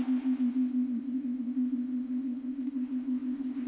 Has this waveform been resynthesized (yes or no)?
yes